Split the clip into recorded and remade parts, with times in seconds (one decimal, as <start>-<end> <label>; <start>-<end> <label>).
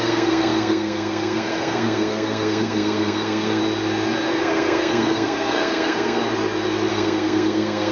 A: 0.0-3.6 remade; 3.6-4.3 recorded; 4.3-6.2 remade; 6.2-6.9 recorded; 6.9-7.9 remade